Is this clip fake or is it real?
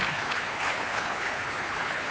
fake